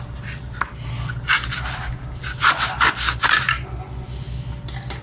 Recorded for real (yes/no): yes